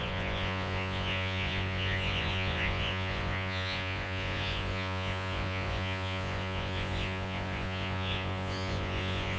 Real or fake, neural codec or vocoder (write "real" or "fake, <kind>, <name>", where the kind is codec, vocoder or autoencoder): fake, vocoder, Vocos